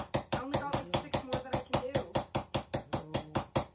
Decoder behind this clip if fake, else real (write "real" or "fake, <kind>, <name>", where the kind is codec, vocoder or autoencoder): real